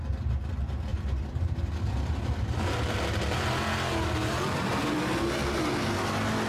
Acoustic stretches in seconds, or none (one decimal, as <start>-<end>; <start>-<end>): 0.0-0.9; 1.8-4.2; 5.0-6.5